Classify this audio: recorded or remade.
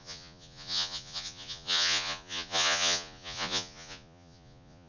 remade